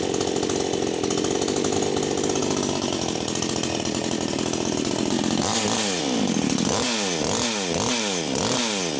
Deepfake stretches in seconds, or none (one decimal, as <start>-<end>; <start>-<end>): none